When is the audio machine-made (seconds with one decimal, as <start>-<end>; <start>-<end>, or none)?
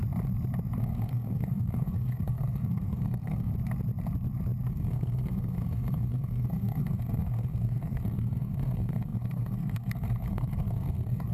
0.8-3.5; 4.7-11.3